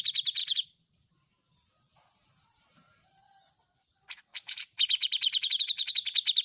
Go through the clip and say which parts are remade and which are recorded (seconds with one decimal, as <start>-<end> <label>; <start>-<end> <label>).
0.0-0.4 recorded; 0.4-3.2 remade; 3.2-4.3 recorded; 4.3-5.9 remade; 5.9-6.4 recorded